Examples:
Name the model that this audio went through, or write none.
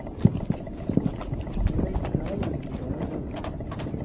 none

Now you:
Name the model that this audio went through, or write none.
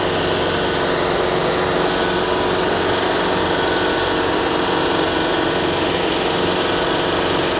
none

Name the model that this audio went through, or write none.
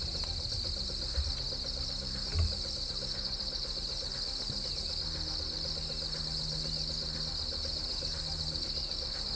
none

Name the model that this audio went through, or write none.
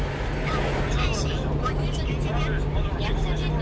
none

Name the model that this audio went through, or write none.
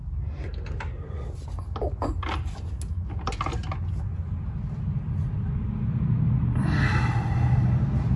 none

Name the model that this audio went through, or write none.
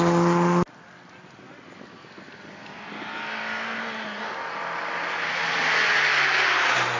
none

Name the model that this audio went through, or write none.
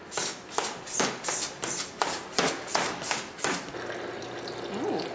none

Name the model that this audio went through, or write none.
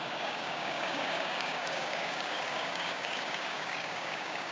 codec, DAC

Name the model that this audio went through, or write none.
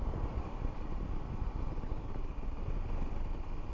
none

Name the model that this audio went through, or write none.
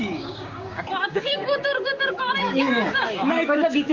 codec, DAC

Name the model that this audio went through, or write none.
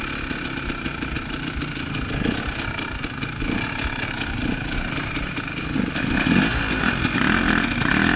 none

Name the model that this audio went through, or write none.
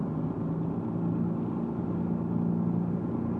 none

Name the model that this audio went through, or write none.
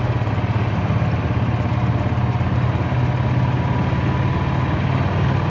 none